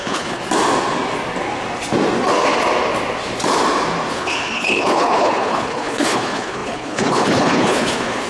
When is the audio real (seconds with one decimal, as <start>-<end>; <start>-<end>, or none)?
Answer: 0.4-4.1